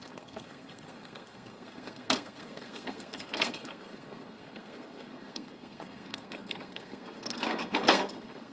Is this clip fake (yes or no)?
yes